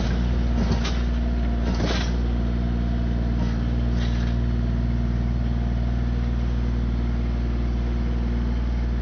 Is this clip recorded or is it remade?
recorded